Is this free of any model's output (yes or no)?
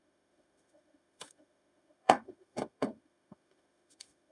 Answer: no